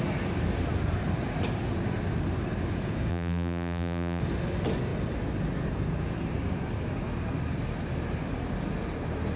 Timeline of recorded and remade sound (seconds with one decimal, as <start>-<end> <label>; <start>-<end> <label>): 0.0-3.1 recorded; 3.1-4.2 remade; 4.2-9.4 recorded